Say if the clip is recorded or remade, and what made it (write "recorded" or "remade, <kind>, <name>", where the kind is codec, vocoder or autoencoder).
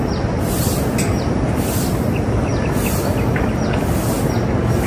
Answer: recorded